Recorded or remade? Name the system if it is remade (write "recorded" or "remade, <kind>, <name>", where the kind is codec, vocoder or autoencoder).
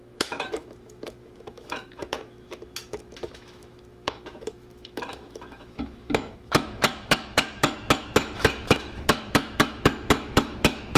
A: remade, autoencoder, DAC-VAE